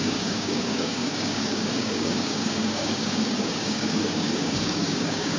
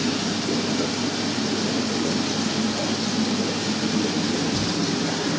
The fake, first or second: first